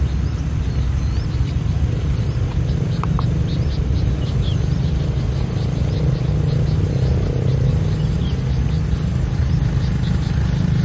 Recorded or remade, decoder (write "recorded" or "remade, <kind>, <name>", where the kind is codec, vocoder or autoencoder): recorded